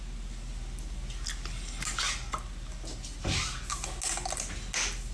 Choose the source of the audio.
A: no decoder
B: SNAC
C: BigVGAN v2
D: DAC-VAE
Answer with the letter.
A